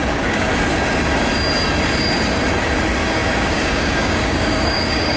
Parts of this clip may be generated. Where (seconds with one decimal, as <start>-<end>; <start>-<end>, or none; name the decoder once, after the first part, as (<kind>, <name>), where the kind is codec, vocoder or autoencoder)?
0.0-0.5 (codec, DAC); 3.0-5.2